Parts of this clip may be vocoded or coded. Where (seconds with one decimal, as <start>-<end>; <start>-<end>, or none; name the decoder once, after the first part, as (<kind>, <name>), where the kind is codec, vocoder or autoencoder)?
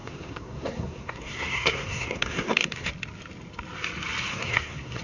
0.0-2.9 (codec, SNAC); 4.3-5.0